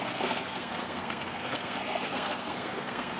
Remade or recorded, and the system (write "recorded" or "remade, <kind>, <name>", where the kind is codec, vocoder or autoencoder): remade, codec, SNAC